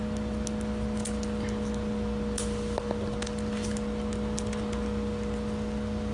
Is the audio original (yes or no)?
yes